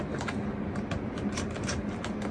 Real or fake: real